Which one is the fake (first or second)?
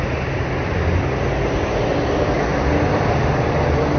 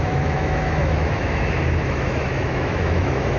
second